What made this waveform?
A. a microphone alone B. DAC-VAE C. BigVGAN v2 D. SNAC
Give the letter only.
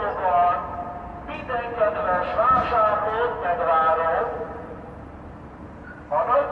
A